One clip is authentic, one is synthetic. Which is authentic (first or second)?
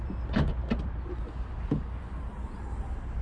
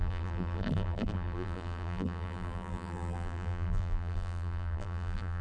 first